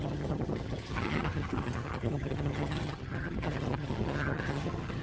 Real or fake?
fake